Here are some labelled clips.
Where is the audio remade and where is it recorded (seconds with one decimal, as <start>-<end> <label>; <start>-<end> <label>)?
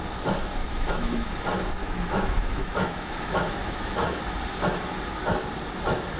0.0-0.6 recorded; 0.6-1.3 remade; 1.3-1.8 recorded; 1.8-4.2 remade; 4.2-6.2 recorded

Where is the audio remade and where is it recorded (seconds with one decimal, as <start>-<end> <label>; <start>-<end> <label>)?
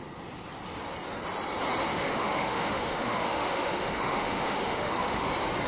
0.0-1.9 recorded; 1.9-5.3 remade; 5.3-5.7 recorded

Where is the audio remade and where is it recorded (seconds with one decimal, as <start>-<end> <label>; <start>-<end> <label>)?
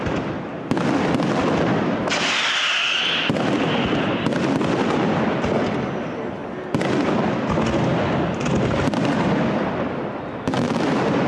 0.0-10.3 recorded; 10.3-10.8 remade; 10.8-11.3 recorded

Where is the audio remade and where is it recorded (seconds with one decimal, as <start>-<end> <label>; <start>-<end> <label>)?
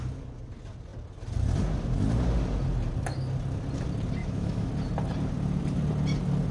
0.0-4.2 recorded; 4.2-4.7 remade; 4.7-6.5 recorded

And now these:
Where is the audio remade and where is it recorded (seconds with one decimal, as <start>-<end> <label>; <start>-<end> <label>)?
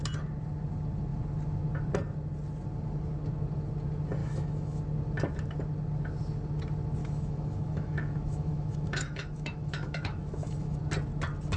0.0-4.2 recorded; 4.2-4.8 remade; 4.8-7.0 recorded; 7.0-10.8 remade; 10.8-11.6 recorded